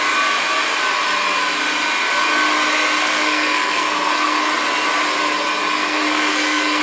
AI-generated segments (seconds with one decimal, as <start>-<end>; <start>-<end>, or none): 3.0-4.5; 5.8-6.8

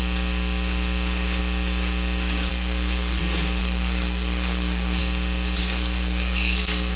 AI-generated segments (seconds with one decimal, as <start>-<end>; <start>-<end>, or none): 2.5-3.2; 3.6-5.0; 5.6-7.0